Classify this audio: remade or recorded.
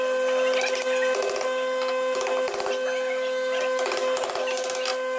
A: recorded